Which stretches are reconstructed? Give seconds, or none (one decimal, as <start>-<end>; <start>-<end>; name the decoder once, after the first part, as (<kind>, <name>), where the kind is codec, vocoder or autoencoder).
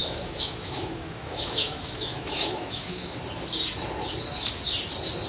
0.0-3.2 (autoencoder, DAC-VAE)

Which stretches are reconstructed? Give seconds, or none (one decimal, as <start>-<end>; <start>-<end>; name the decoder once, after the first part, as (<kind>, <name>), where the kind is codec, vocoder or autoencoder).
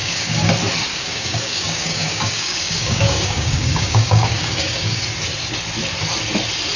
0.0-0.5 (codec, DAC); 0.9-5.0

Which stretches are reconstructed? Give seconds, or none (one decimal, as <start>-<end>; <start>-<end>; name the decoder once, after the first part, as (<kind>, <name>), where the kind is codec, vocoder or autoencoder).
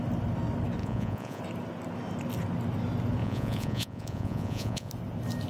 0.8-1.4 (vocoder, Vocos); 3.2-4.9